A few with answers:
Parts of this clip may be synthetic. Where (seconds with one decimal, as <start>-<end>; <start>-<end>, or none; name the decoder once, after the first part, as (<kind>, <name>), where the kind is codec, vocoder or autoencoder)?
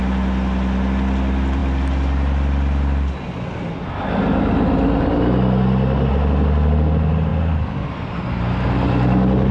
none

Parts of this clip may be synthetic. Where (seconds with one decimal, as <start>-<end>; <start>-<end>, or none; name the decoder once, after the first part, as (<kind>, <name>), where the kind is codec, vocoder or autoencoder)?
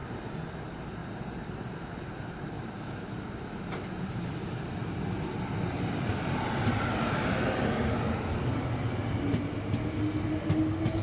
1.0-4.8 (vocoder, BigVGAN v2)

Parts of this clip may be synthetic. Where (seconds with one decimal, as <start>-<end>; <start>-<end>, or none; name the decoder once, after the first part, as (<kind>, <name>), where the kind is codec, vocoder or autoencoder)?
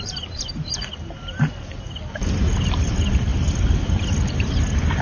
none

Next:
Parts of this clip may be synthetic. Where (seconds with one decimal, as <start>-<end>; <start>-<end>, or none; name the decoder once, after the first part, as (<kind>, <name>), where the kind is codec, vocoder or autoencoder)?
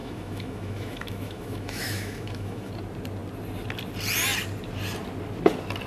0.0-2.7 (autoencoder, DAC-VAE)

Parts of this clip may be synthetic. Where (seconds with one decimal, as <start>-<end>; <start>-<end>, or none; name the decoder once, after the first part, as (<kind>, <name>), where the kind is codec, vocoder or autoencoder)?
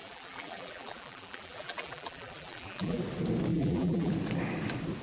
0.0-3.0 (vocoder, BigVGAN v2); 3.5-4.1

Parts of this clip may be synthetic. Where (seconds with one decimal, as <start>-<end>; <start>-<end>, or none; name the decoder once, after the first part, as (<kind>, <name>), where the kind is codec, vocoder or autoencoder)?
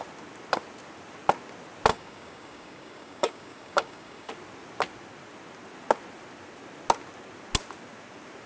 1.9-4.3 (codec, DAC)